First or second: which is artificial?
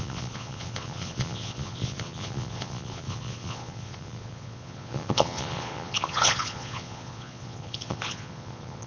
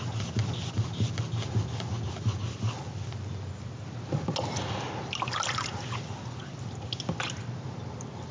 first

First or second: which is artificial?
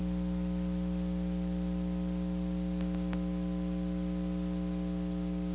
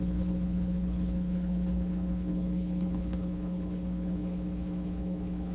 second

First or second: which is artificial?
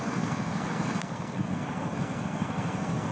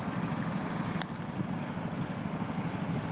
first